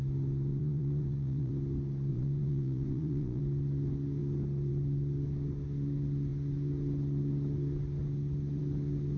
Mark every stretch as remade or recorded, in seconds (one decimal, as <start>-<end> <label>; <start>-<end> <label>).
0.0-0.5 recorded; 0.5-1.5 remade; 1.5-2.1 recorded; 2.1-3.4 remade; 3.4-9.2 recorded